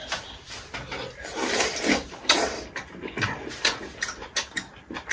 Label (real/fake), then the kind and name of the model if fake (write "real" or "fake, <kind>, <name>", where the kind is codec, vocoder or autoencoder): fake, vocoder, BigVGAN v2